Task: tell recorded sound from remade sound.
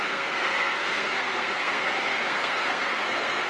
remade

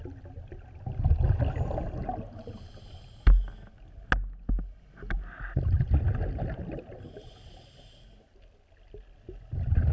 recorded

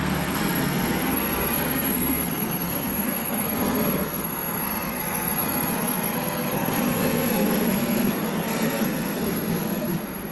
remade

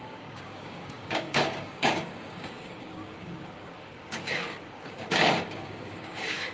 remade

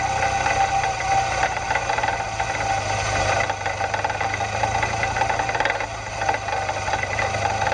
recorded